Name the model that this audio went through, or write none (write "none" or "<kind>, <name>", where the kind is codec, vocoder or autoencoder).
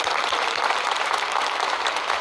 vocoder, BigVGAN v2